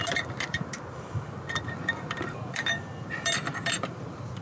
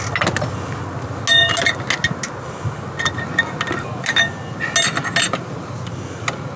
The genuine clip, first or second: second